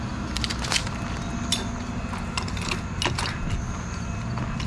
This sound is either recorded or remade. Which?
recorded